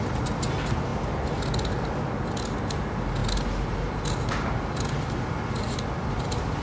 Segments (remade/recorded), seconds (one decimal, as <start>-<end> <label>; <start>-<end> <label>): 0.0-6.6 recorded